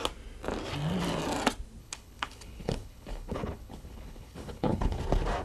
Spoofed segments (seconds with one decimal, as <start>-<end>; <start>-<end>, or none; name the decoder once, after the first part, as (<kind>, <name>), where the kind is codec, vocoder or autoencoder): 1.8-5.0 (codec, HILCodec)